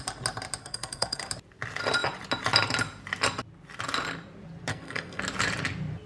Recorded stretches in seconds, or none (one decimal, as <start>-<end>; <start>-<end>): 0.0-0.6; 1.3-4.7; 5.2-6.1